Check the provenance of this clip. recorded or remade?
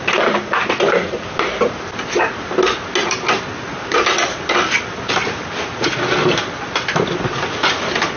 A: recorded